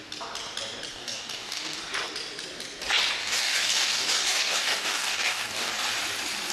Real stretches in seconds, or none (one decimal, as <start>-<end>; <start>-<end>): 0.0-0.9; 1.8-3.2; 5.7-6.5